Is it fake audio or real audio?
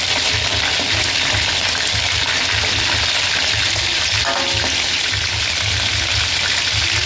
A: real